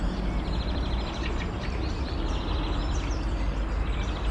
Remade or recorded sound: recorded